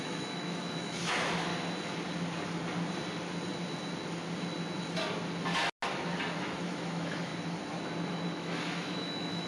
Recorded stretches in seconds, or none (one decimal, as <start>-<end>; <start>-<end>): 1.5-6.4; 7.3-8.1